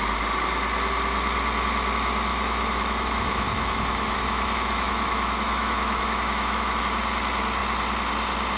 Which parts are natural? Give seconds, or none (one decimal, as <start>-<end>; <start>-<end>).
0.0-2.3; 6.8-8.6